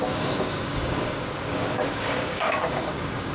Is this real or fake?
fake